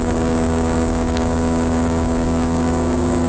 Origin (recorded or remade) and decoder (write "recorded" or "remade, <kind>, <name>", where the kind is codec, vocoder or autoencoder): remade, codec, DAC